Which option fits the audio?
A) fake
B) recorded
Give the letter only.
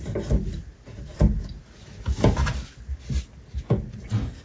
B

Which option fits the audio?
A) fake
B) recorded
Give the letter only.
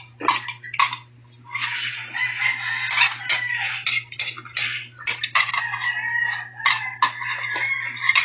B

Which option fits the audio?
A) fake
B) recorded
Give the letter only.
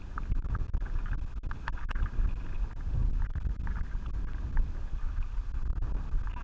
B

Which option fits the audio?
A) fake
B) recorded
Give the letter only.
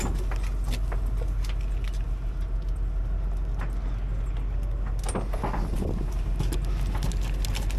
B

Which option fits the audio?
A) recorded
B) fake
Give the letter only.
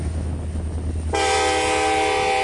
A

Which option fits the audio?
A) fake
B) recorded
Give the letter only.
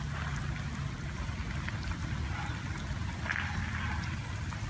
B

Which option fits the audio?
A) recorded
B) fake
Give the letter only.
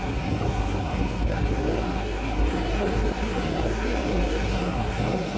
B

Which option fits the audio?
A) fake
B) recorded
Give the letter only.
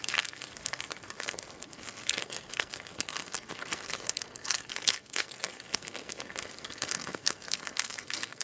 A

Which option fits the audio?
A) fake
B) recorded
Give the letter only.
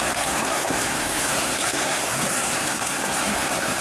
A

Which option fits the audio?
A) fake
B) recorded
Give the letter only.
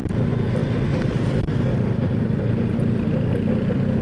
B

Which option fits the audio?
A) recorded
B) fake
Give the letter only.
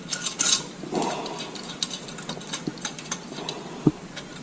A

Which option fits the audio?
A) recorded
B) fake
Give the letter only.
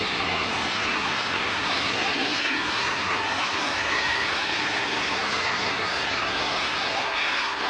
B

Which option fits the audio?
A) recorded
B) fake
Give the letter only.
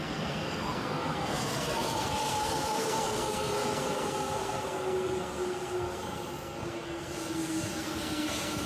B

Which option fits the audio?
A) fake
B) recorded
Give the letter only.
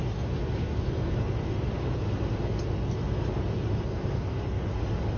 B